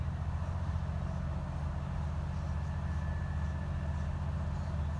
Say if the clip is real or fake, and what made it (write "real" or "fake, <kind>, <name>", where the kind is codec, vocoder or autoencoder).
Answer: real